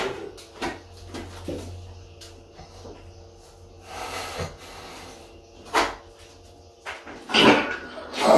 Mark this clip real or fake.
real